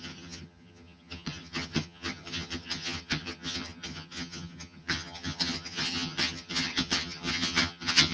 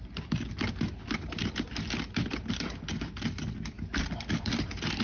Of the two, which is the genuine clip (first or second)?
second